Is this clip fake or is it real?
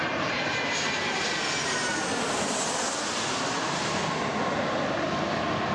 real